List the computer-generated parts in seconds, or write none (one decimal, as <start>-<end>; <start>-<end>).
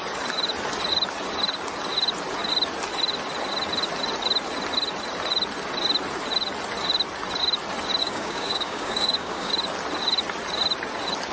8.0-9.5